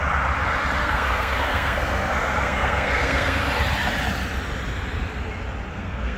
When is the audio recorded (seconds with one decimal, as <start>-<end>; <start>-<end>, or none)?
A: 0.0-0.8; 3.4-5.7